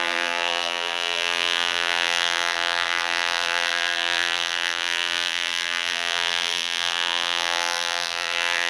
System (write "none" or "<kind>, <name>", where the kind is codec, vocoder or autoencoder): vocoder, BigVGAN v2